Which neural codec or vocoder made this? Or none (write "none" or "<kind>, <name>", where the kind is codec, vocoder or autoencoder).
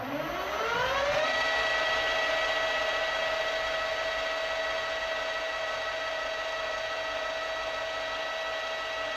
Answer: none